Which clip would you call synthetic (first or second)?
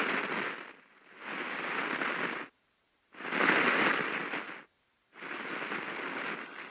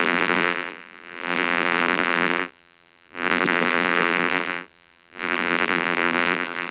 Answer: second